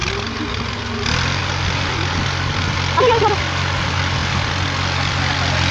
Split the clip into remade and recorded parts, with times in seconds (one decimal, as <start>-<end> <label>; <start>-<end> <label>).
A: 0.0-5.7 recorded